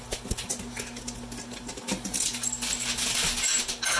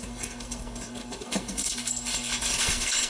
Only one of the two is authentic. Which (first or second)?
first